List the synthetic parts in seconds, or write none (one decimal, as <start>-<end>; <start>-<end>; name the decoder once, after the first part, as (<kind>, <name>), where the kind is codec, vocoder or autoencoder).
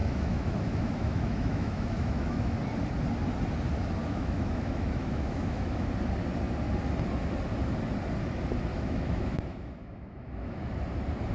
0.0-2.6 (autoencoder, DAC-VAE); 4.0-5.9; 8.7-10.7